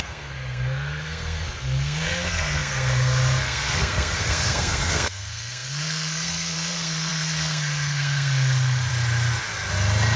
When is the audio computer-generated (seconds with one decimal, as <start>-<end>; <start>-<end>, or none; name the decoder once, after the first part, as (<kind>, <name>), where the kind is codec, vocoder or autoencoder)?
0.0-8.9 (codec, SNAC)